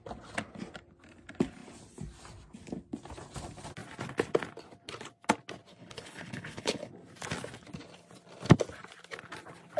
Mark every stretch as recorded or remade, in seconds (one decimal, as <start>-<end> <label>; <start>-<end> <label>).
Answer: 0.0-5.7 recorded; 5.7-6.9 remade; 6.9-9.8 recorded

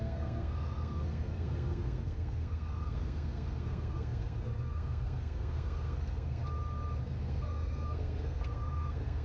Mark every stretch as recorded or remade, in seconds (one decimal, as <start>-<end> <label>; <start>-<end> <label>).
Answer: 0.0-6.4 remade; 6.4-7.0 recorded; 7.0-9.2 remade

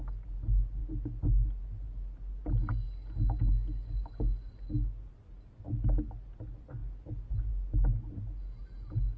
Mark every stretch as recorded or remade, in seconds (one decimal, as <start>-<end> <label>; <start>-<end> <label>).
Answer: 0.0-9.2 recorded

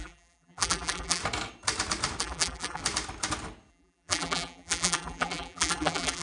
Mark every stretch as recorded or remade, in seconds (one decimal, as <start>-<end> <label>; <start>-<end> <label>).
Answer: 0.0-1.2 remade; 1.2-2.2 recorded; 2.2-2.8 remade; 2.8-3.7 recorded; 3.7-6.2 remade

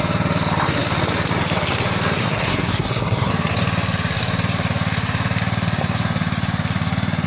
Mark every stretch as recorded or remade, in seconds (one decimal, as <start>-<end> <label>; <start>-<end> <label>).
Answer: 0.0-2.2 recorded; 2.2-3.3 remade; 3.3-7.3 recorded

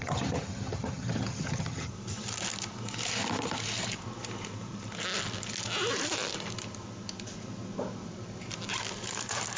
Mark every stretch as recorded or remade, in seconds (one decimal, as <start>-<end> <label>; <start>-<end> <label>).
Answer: 0.0-1.9 remade; 1.9-9.6 recorded

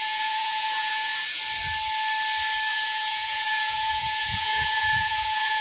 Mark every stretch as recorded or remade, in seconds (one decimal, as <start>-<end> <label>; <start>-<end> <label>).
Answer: 0.0-1.1 remade; 1.1-2.7 recorded; 2.7-5.6 remade

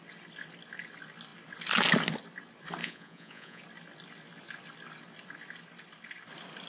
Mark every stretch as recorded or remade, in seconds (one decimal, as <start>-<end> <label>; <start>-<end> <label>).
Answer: 0.0-2.8 recorded; 2.8-3.6 remade; 3.6-6.7 recorded